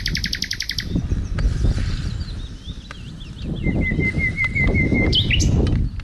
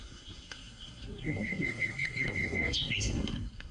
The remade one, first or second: second